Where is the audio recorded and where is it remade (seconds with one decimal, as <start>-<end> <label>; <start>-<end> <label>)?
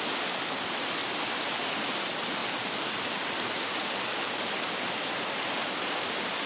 0.0-1.0 recorded; 1.0-1.9 remade; 1.9-2.4 recorded; 2.4-4.9 remade; 4.9-6.5 recorded